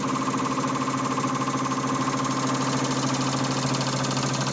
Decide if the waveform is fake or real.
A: real